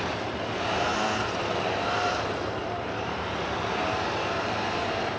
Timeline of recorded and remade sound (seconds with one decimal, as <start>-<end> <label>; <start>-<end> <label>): 0.0-5.2 remade